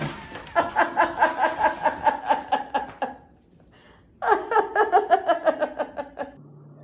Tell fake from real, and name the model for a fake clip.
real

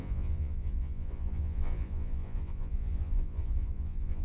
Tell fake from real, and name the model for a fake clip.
fake, vocoder, Vocos